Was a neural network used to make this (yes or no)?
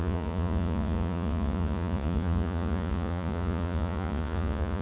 yes